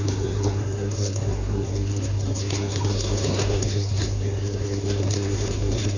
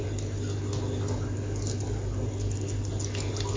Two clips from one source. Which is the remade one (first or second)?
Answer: first